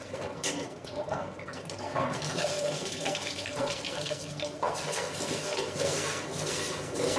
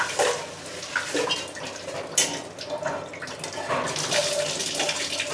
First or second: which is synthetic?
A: first